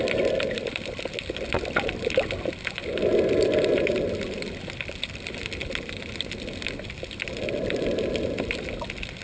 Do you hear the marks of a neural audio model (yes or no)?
no